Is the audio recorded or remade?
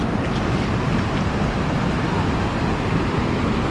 recorded